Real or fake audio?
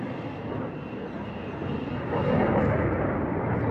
real